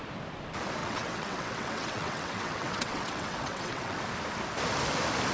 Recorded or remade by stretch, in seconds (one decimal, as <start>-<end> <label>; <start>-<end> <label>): 0.0-0.8 recorded; 0.8-4.0 remade; 4.0-5.3 recorded